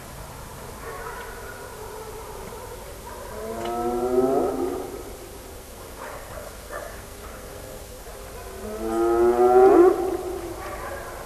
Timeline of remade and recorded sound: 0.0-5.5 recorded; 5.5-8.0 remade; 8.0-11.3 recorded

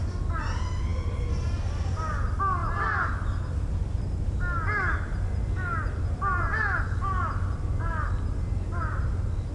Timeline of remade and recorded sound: 0.0-9.5 recorded